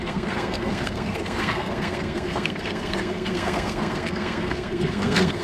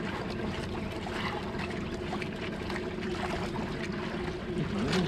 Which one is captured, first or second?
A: second